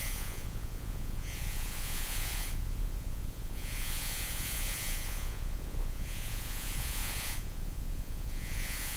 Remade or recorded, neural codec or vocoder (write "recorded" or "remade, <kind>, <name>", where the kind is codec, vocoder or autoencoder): remade, vocoder, Vocos